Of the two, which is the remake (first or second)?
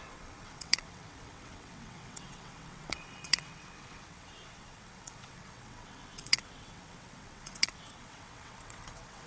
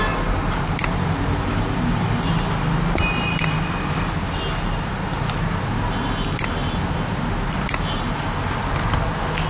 first